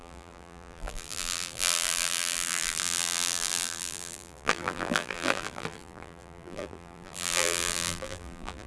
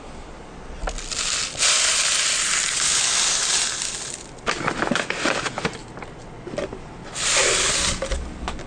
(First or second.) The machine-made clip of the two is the first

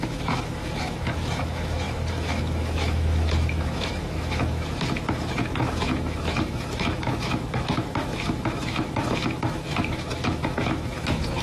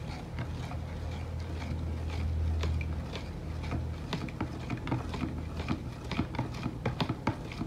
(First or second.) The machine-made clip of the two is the first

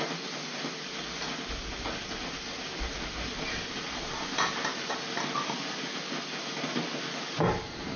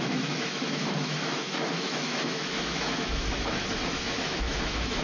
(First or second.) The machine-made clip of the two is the second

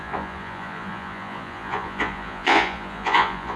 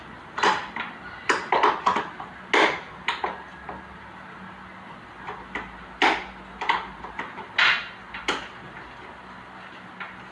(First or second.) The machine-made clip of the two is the first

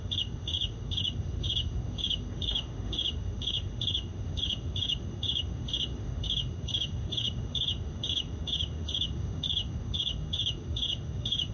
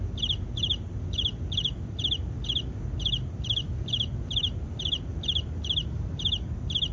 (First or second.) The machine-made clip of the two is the first